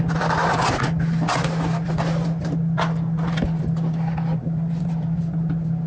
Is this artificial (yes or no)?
no